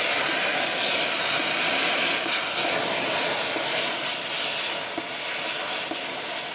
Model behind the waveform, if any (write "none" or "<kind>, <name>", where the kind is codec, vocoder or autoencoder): none